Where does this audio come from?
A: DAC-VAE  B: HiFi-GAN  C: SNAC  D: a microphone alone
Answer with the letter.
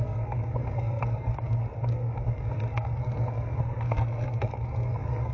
C